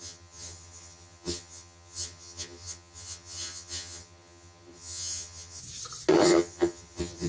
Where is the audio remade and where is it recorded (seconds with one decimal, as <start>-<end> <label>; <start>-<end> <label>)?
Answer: 0.0-5.6 remade; 5.6-6.1 recorded; 6.1-7.3 remade